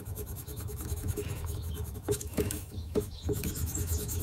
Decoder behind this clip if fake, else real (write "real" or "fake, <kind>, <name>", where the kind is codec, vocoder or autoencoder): fake, autoencoder, DAC-VAE